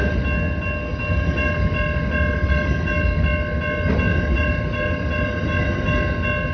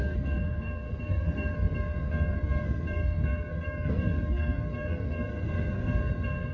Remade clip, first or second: second